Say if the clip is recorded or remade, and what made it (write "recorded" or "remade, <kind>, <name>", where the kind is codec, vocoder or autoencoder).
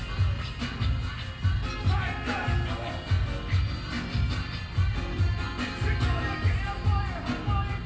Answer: recorded